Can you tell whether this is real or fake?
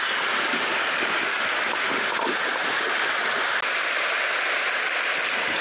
real